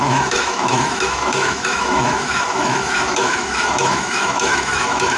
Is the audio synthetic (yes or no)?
yes